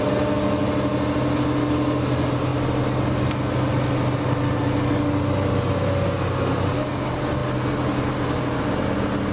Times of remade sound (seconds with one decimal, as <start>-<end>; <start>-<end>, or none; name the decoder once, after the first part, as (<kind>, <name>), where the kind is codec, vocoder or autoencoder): none